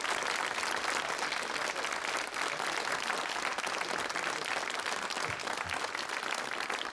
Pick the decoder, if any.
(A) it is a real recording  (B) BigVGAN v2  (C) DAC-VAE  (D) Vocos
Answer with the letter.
A